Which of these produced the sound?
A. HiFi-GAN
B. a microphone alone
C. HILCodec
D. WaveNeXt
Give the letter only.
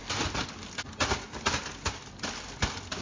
B